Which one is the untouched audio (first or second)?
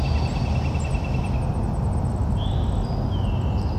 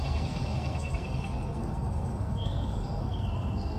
first